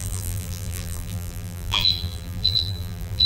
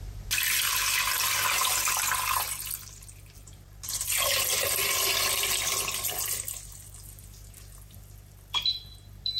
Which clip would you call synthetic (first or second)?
first